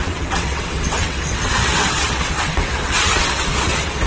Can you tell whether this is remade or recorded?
remade